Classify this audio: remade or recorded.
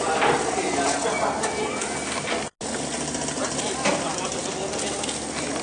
recorded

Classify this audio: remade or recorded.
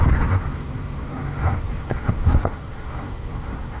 remade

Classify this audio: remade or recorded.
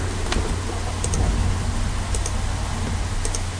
recorded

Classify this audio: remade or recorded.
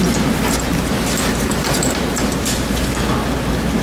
recorded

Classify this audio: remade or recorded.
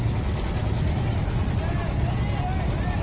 recorded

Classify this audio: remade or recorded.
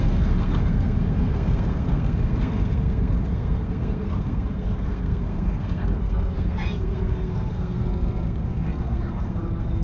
remade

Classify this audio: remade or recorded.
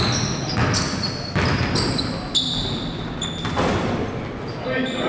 recorded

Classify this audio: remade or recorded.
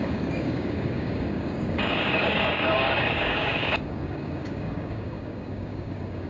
remade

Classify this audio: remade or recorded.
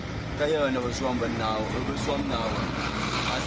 recorded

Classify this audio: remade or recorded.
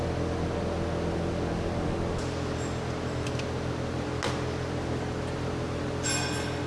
recorded